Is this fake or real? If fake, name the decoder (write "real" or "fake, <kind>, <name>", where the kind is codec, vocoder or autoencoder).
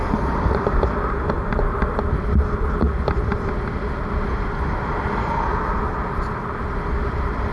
real